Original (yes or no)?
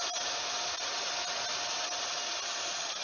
yes